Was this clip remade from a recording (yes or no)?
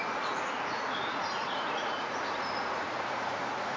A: yes